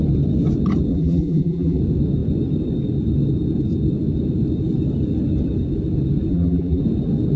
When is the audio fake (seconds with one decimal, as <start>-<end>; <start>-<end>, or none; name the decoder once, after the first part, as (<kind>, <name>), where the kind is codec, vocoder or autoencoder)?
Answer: 0.9-1.8 (vocoder, BigVGAN v2); 6.3-6.8

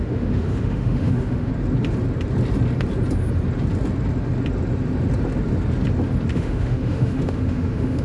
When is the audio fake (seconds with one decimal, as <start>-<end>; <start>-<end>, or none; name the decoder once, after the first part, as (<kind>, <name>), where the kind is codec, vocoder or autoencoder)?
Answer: 0.0-1.5 (autoencoder, DAC-VAE); 6.3-8.0